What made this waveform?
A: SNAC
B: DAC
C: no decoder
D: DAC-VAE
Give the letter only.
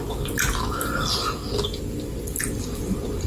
C